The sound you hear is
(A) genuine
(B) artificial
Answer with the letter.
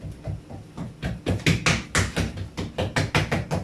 A